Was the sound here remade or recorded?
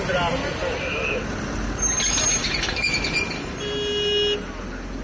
recorded